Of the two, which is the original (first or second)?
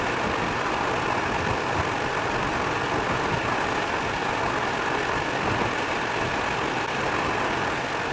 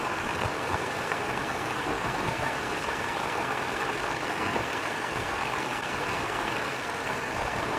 first